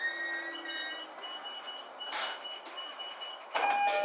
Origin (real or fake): real